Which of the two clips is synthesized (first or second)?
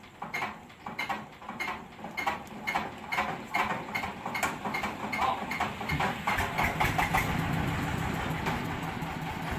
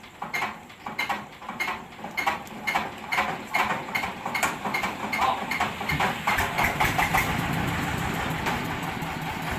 second